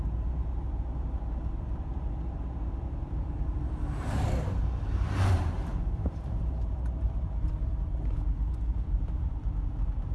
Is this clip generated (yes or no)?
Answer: yes